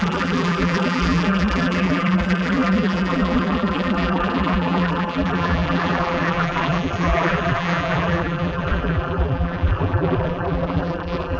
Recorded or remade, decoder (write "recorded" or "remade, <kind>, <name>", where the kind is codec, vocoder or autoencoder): remade, vocoder, BigVGAN v2